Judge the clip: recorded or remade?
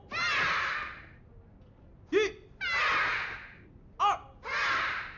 recorded